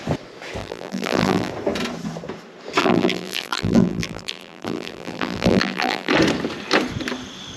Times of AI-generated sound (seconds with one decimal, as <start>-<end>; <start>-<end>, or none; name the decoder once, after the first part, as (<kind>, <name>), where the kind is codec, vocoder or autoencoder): 0.6-1.5 (vocoder, BigVGAN v2); 2.8-6.1